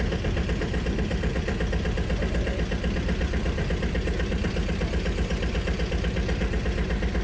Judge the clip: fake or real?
fake